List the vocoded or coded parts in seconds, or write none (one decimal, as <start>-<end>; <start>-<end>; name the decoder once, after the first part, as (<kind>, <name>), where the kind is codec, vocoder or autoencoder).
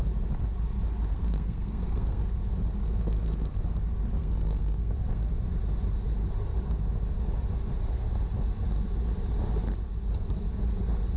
1.1-2.2 (codec, SNAC); 2.8-3.6; 4.2-5.3